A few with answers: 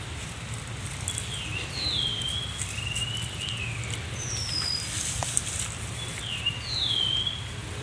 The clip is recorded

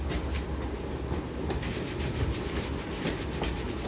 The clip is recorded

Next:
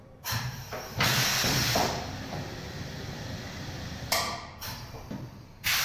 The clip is remade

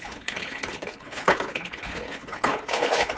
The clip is remade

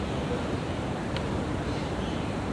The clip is remade